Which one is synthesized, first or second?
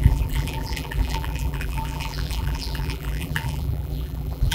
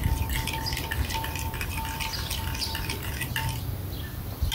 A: first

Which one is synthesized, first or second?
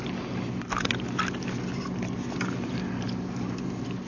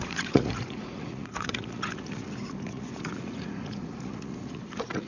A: second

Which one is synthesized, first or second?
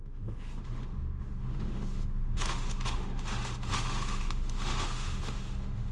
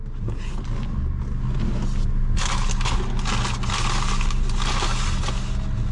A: first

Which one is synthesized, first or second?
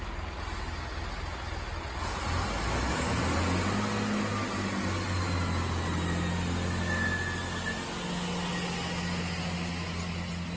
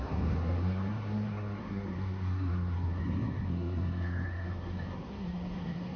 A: second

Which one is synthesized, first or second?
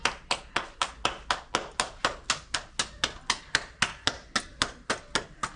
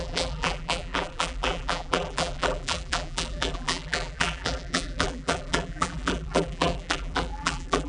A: second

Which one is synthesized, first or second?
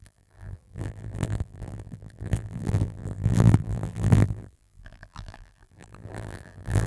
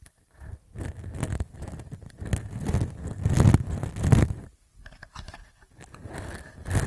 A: first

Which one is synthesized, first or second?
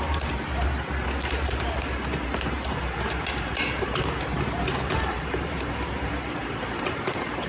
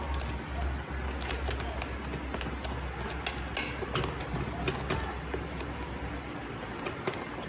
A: first